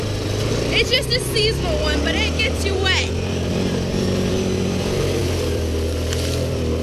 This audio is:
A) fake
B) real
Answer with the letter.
A